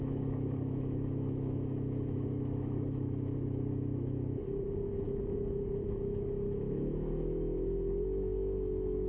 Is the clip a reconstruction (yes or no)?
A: yes